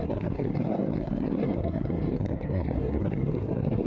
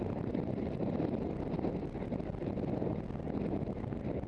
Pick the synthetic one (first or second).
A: first